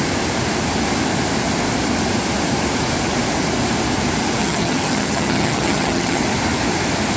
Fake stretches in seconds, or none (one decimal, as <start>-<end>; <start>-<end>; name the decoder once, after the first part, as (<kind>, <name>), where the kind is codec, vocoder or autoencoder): 4.4-6.2 (vocoder, HiFi-GAN)